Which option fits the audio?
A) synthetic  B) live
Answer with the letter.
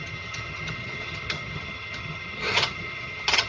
A